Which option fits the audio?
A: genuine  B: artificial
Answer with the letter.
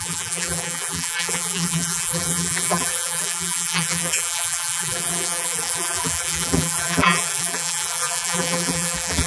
B